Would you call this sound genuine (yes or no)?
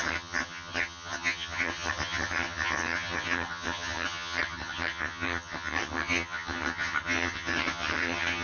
no